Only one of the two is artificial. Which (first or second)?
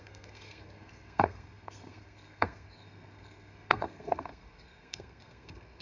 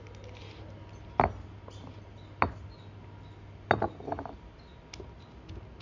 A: first